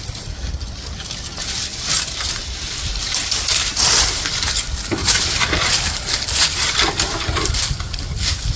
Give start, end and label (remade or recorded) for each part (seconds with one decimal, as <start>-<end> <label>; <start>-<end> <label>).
0.0-8.6 recorded